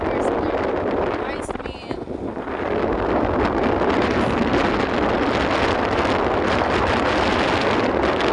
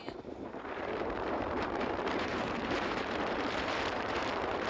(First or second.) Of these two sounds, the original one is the first